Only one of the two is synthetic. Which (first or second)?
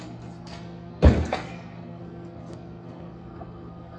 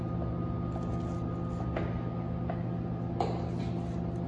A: first